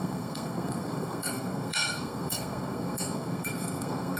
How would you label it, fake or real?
fake